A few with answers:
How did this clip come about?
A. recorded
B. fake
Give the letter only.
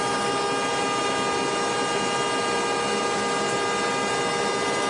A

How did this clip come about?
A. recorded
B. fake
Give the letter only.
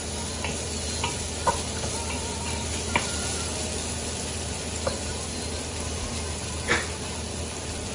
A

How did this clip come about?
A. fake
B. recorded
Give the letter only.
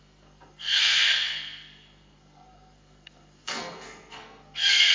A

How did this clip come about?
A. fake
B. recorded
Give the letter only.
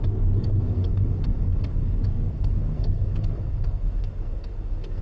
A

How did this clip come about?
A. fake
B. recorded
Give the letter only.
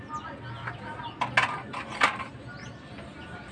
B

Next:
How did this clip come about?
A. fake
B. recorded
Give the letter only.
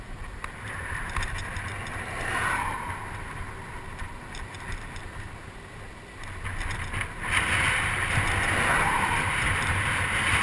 B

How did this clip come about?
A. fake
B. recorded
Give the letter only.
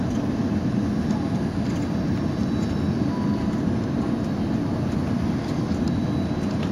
B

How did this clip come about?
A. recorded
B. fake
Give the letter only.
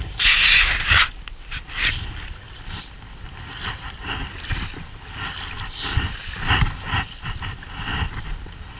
A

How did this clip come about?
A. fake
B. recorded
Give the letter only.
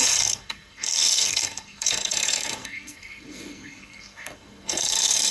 A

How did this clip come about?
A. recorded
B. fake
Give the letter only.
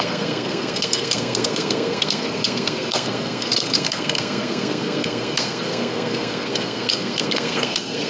B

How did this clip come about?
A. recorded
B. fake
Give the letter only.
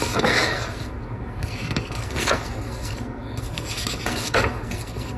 B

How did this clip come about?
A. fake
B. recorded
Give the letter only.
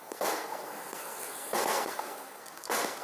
A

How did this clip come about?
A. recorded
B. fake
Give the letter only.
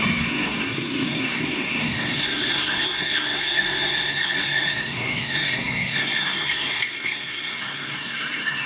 B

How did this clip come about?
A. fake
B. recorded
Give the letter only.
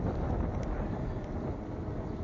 B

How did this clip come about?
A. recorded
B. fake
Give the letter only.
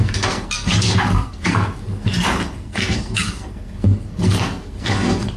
B